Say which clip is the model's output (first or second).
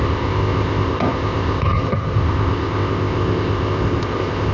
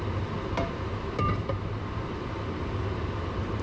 first